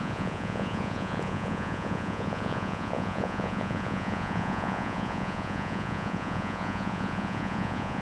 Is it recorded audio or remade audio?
remade